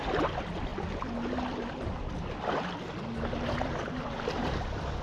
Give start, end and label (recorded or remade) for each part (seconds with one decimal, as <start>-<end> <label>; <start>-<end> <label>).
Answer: 0.0-5.0 recorded